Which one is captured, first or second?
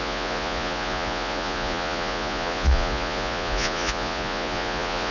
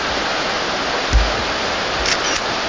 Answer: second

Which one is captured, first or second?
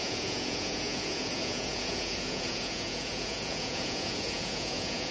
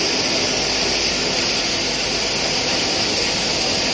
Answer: second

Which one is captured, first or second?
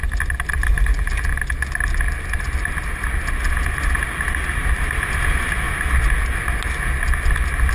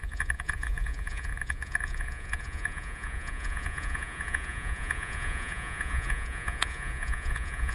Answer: first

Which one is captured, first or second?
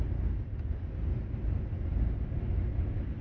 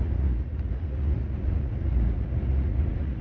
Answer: first